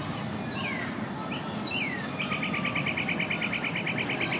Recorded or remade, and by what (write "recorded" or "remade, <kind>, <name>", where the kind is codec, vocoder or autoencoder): recorded